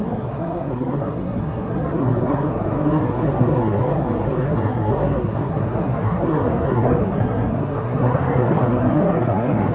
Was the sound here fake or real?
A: fake